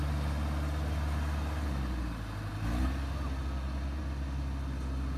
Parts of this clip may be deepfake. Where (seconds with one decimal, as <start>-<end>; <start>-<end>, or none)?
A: none